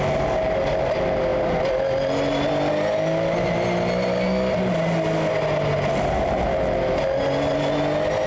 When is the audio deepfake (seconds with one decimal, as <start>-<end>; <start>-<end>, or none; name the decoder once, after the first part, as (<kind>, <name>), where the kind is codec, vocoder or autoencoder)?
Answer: none